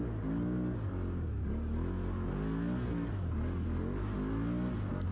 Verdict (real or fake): real